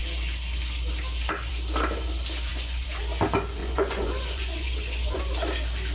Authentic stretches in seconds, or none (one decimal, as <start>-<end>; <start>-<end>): 0.0-2.5; 3.0-3.6; 5.2-5.9